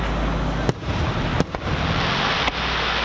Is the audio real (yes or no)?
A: yes